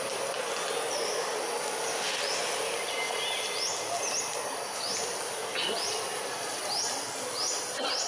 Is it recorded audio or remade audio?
recorded